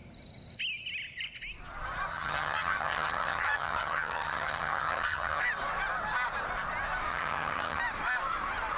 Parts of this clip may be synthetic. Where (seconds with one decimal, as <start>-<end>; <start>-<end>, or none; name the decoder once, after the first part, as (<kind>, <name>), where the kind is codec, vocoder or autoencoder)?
2.1-5.4 (vocoder, HiFi-GAN); 7.1-7.8